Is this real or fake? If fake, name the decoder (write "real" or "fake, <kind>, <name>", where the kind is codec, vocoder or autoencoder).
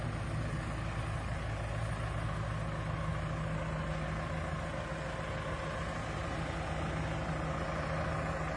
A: real